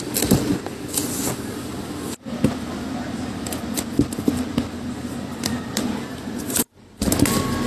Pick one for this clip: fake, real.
real